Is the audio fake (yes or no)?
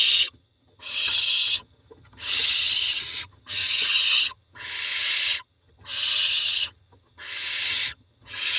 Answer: yes